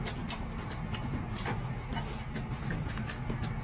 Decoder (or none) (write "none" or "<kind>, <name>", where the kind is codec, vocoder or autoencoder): none